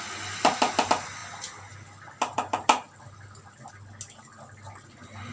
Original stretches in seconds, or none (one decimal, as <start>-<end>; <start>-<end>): 0.0-5.3